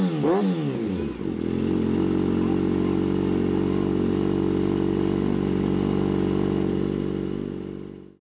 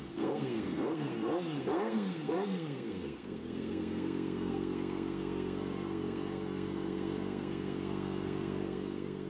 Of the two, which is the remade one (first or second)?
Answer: second